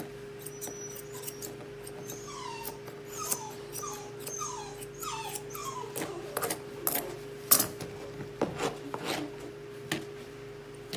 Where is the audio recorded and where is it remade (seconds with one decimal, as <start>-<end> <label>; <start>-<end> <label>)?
0.0-11.0 recorded